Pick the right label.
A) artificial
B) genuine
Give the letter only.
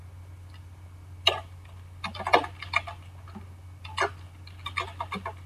B